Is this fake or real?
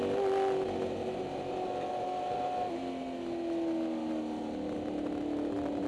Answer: real